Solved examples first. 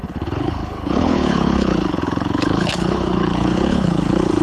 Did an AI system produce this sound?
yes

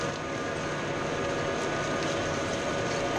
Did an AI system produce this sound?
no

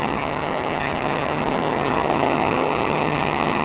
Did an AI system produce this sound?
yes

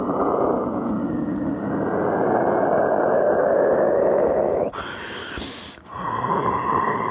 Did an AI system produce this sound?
no